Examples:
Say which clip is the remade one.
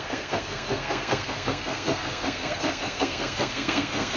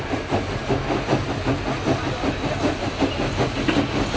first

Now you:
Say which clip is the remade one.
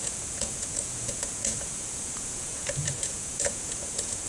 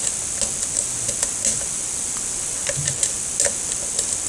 first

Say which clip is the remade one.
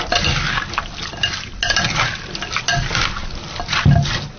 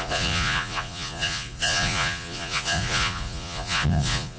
second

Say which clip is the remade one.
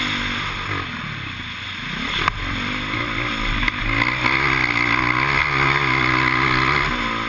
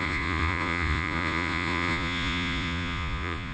second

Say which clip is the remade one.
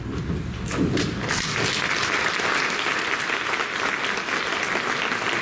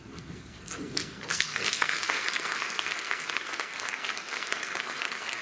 second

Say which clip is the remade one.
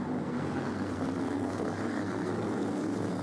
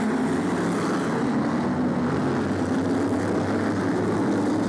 first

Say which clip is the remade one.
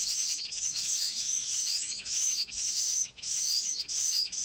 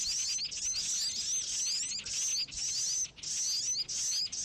first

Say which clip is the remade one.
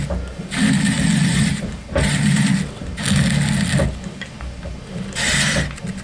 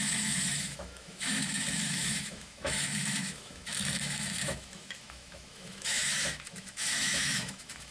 second